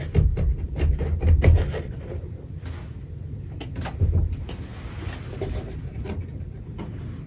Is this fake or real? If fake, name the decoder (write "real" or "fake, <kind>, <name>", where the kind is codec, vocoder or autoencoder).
real